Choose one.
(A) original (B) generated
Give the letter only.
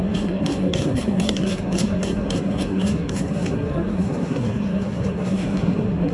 B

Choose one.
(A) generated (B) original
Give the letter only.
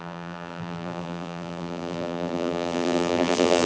A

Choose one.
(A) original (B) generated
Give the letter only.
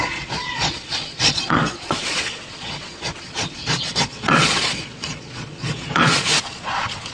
B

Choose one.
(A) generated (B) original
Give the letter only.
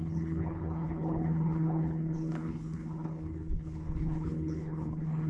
A